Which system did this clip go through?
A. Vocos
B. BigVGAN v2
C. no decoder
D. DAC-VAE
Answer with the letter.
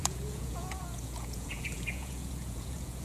A